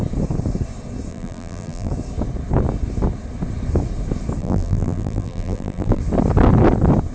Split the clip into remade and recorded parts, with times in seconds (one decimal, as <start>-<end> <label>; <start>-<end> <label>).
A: 0.0-1.1 recorded; 1.1-1.9 remade; 1.9-4.4 recorded; 4.4-6.0 remade; 6.0-7.1 recorded